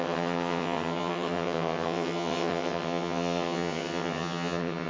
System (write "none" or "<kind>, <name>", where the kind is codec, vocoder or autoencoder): vocoder, HiFi-GAN